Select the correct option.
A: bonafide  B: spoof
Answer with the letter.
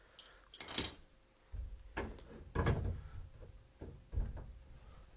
A